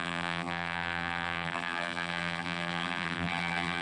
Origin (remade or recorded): remade